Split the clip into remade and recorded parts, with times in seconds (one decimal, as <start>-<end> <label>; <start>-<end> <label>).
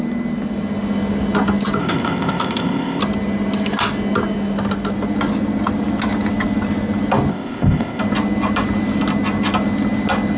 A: 0.0-1.8 recorded; 1.8-3.0 remade; 3.0-7.3 recorded; 7.3-8.0 remade; 8.0-10.4 recorded